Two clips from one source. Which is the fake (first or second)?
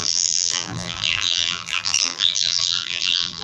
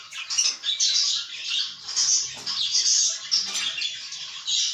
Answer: first